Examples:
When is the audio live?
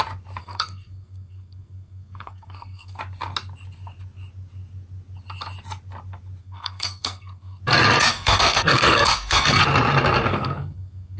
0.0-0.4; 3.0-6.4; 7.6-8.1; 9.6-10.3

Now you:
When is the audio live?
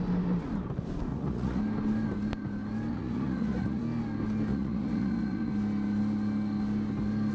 0.0-1.1; 1.6-2.9; 3.8-4.5; 5.5-7.3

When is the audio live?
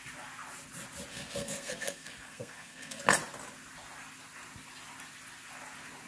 0.0-1.1; 3.0-6.1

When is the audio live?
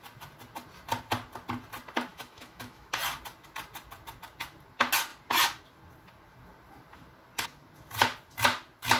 0.0-2.1; 2.9-9.0